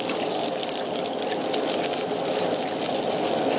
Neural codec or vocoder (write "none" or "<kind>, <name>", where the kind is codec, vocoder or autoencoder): none